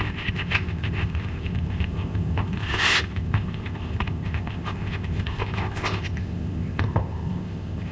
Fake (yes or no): yes